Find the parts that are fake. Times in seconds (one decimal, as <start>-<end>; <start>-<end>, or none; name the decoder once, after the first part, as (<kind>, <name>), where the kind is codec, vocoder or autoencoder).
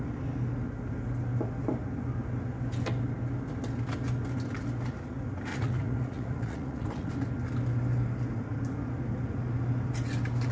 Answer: 5.5-7.1 (vocoder, Vocos)